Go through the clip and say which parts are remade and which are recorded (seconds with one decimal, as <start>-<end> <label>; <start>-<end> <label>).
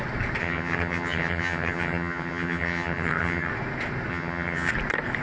0.0-0.4 recorded; 0.4-3.5 remade; 3.5-4.1 recorded; 4.1-4.7 remade; 4.7-5.2 recorded